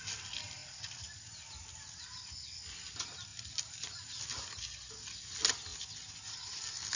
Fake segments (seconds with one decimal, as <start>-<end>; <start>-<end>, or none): none